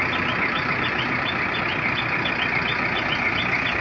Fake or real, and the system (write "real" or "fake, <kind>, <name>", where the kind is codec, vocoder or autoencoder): real